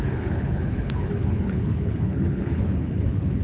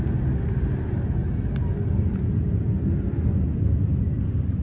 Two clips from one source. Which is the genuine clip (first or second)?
second